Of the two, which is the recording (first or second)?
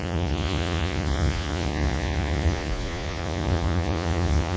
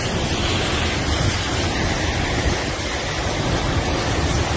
second